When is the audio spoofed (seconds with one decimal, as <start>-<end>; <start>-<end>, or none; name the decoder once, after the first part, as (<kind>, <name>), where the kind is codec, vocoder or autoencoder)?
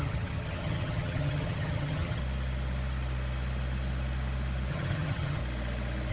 0.0-2.2 (vocoder, HiFi-GAN); 4.7-5.4